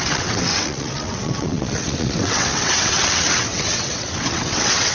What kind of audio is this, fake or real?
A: fake